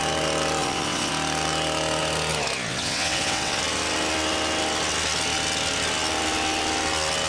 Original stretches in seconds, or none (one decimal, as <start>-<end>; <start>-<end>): 0.0-0.6; 1.1-2.7; 3.6-7.3